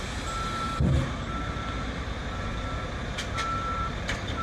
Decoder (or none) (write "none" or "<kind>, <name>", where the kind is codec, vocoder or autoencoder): none